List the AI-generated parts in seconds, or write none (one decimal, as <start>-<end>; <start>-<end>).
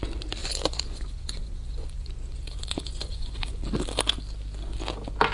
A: 0.4-3.6